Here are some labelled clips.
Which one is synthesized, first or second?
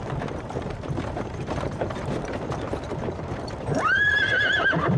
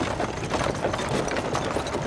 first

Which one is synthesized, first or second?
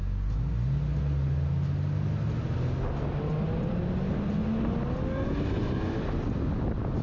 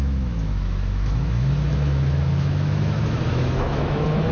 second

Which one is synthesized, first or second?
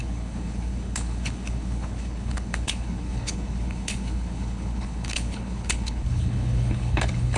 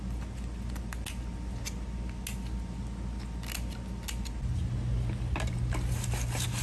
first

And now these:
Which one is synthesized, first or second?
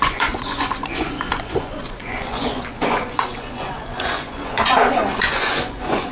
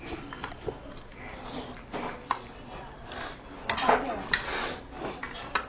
first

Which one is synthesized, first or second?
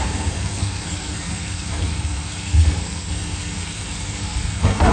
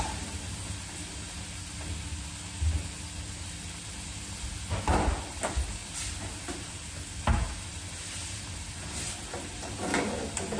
first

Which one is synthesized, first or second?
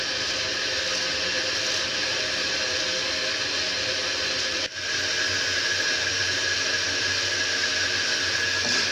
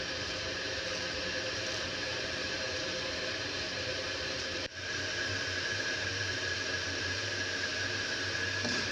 second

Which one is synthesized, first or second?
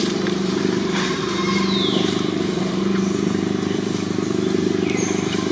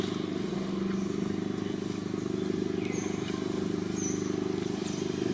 first